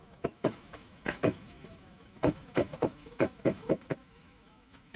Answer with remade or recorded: remade